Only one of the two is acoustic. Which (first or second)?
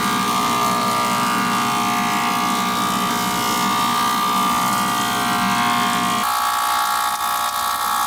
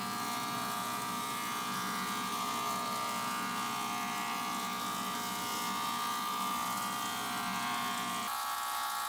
first